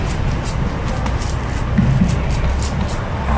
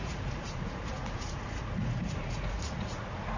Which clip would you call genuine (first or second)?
first